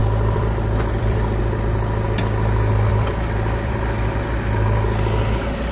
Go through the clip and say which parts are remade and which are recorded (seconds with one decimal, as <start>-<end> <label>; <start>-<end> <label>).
0.0-1.4 remade; 1.4-2.9 recorded; 2.9-4.2 remade; 4.2-5.7 recorded